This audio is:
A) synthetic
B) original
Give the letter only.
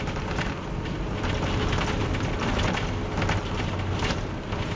B